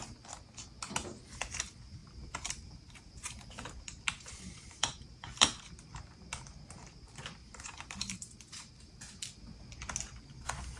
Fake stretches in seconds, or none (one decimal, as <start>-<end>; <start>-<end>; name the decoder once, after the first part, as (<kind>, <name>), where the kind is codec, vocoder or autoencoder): 2.0-5.6 (vocoder, BigVGAN v2); 7.4-9.0

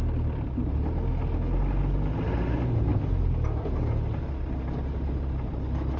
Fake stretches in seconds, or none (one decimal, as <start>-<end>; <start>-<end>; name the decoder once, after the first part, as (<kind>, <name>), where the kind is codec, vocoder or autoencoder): none

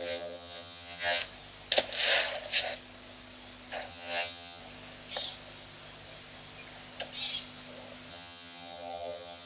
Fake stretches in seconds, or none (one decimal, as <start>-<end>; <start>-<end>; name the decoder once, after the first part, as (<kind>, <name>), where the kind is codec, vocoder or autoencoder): 0.0-1.2 (vocoder, HiFi-GAN); 3.9-4.6; 8.1-9.5

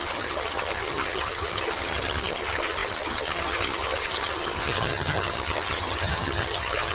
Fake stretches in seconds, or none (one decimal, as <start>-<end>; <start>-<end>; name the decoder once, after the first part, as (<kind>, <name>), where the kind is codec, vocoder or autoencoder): 0.0-6.9 (vocoder, HiFi-GAN)

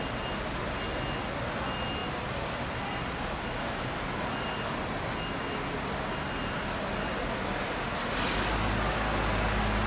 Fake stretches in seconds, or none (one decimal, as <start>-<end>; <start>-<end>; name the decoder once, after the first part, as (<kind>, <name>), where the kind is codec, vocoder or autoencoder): none